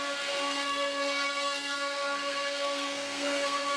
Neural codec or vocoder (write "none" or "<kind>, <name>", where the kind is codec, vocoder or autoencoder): codec, SNAC